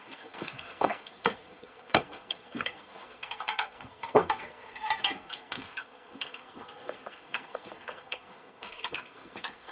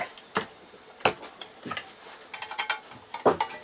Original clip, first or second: second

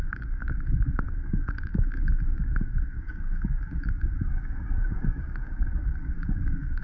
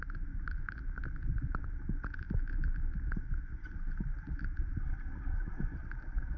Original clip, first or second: second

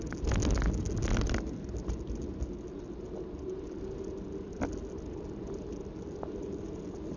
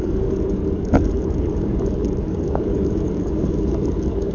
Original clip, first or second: first